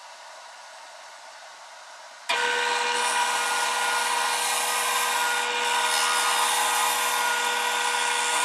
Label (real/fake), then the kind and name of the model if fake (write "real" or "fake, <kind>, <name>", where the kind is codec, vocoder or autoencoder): real